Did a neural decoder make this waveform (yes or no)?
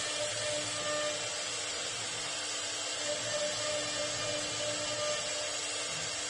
no